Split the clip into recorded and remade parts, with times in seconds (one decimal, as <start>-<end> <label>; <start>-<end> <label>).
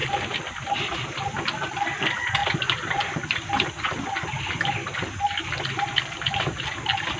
0.0-7.2 recorded